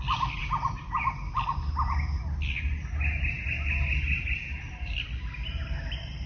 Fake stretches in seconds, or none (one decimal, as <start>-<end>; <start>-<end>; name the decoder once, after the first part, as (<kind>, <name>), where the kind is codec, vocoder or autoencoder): none